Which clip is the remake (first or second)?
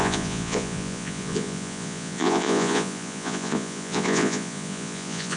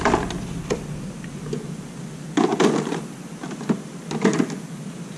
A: first